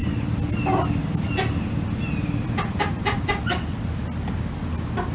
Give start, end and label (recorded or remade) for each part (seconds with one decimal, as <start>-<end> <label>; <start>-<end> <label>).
0.0-5.1 recorded